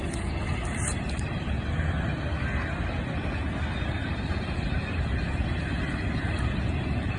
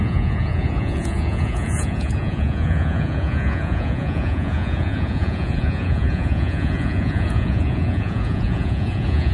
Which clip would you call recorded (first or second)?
first